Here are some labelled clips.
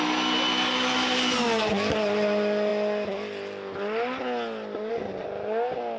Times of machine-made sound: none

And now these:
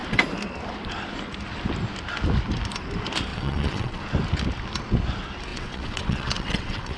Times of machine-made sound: 3.3-4.0 (vocoder, WaveNeXt); 5.5-7.0

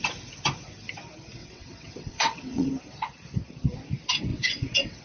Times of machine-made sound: 1.4-2.7 (vocoder, WaveNeXt); 4.3-5.0